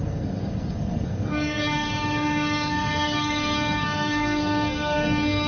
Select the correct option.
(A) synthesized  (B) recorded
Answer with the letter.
A